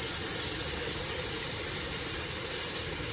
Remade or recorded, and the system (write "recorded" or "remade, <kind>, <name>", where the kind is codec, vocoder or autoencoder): remade, vocoder, BigVGAN v2